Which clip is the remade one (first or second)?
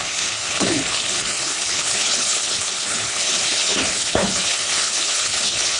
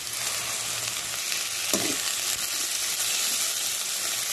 first